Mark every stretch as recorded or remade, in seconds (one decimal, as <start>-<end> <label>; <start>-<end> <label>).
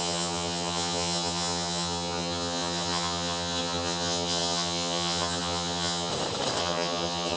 0.0-6.1 remade; 6.1-6.6 recorded; 6.6-7.4 remade